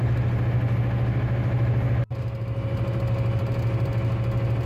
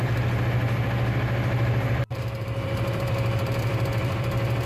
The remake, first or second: second